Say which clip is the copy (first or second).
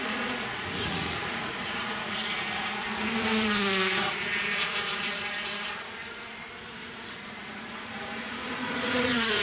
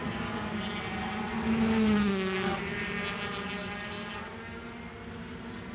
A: first